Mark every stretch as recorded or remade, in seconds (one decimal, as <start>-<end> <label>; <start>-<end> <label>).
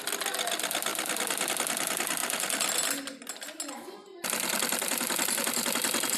0.0-6.2 recorded